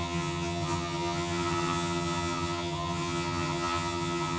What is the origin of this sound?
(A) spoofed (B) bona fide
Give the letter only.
A